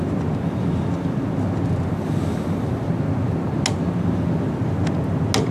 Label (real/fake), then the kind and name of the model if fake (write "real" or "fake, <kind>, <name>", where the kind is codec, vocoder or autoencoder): real